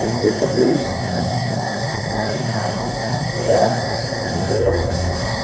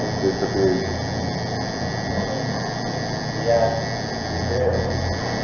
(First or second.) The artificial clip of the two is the first